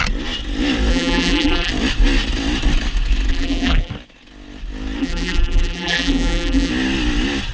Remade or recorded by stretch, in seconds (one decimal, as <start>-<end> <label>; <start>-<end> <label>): 0.0-0.9 recorded; 0.9-1.7 remade; 1.7-3.3 recorded; 3.3-3.9 remade; 3.9-5.0 recorded; 5.0-6.7 remade; 6.7-7.5 recorded